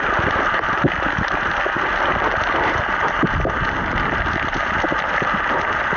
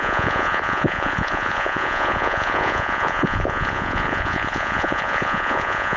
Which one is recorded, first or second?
first